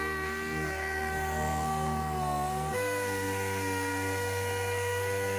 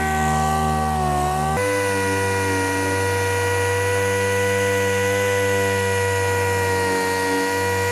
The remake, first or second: first